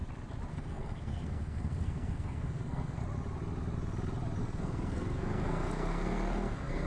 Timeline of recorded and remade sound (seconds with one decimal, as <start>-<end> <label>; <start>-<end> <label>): 0.0-0.5 recorded; 0.5-3.0 remade; 3.0-4.4 recorded; 4.4-6.9 remade